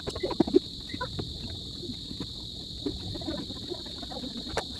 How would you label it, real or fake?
fake